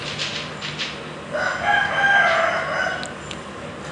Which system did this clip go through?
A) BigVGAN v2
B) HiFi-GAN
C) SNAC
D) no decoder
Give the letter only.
D